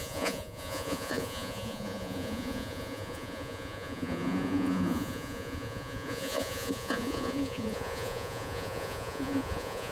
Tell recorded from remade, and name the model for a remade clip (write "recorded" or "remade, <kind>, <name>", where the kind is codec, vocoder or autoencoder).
remade, vocoder, Vocos